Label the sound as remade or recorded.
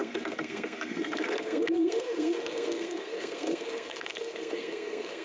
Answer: remade